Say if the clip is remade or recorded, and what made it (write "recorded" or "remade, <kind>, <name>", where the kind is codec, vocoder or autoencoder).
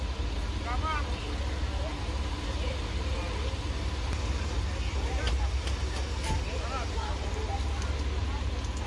recorded